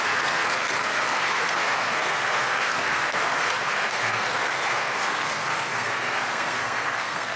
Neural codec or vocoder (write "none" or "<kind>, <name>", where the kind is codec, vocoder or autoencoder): codec, SNAC